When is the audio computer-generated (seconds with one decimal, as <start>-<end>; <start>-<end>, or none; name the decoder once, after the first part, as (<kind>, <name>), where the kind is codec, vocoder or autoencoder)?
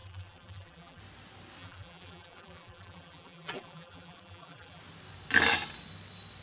0.0-1.0 (vocoder, BigVGAN v2); 1.6-4.8